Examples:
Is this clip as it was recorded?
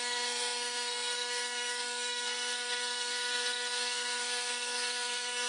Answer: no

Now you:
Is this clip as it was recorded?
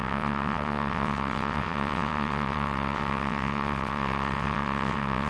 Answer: no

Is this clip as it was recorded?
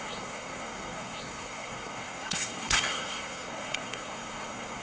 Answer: no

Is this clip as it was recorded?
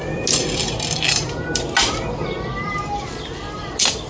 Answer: yes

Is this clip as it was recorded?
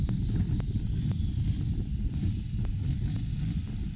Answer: yes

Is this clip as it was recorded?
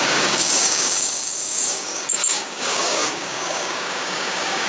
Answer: no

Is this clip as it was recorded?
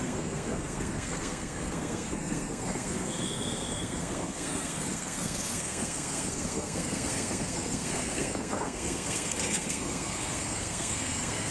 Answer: no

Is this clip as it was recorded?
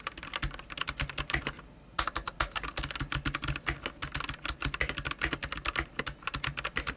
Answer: yes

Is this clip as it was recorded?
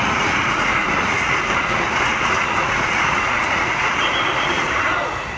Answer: no